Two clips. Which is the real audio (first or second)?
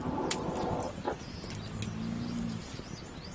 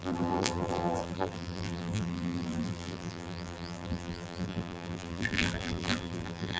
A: first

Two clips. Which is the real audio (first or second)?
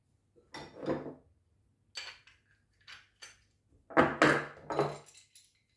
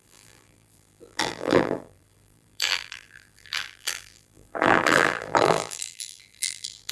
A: first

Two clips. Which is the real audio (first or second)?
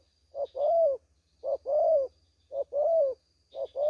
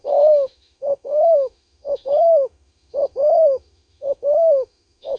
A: first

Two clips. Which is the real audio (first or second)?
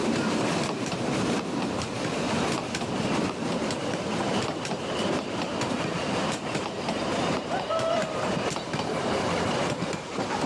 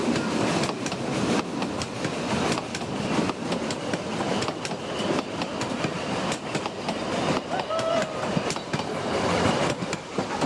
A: second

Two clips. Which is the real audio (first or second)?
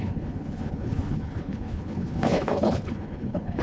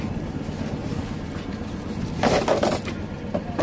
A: second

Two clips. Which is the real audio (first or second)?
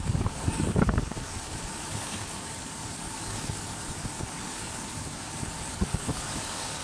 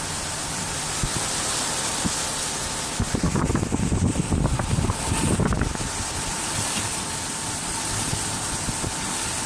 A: second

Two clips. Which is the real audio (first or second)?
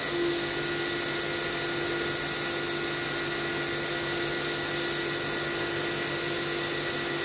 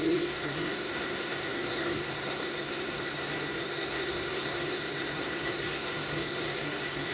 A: first